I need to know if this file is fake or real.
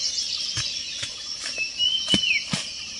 real